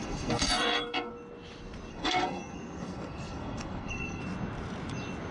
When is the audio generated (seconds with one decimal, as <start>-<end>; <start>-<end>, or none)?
0.0-1.1; 1.9-4.2